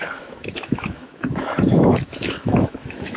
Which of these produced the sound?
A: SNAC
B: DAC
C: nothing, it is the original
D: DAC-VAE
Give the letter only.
D